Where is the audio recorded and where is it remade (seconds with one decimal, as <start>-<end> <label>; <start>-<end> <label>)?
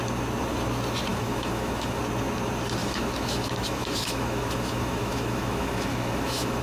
0.0-1.1 recorded; 1.1-2.0 remade; 2.0-2.8 recorded; 2.8-6.6 remade